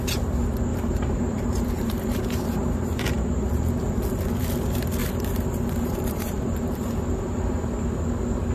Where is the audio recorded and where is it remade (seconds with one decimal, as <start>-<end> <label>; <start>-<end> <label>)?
0.0-0.7 recorded; 0.7-3.0 remade; 3.0-5.0 recorded; 5.0-7.7 remade; 7.7-8.5 recorded